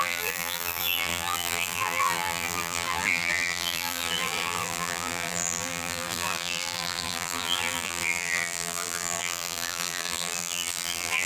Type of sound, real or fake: fake